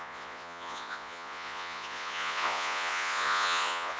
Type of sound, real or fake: fake